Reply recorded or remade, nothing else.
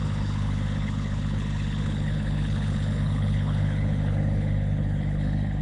remade